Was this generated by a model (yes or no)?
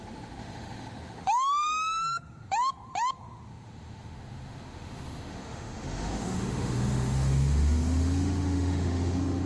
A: yes